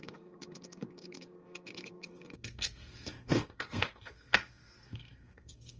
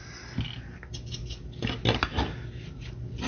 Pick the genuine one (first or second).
second